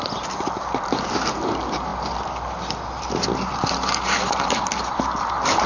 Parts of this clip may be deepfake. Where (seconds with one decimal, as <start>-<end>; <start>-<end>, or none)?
none